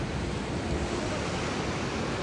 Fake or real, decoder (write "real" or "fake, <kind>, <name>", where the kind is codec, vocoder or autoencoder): real